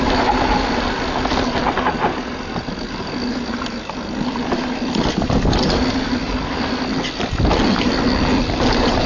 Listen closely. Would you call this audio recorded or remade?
recorded